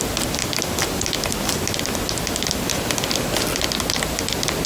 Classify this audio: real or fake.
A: real